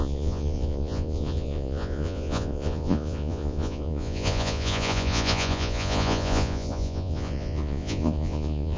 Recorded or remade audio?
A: remade